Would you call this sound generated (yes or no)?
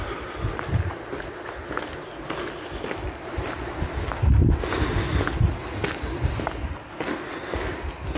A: no